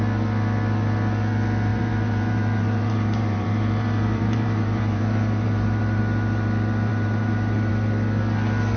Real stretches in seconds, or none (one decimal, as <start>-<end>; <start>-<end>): 0.0-1.7; 6.0-6.9; 7.7-8.8

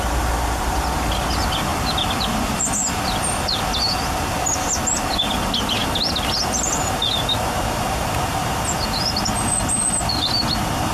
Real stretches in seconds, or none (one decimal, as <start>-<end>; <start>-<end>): 0.0-10.9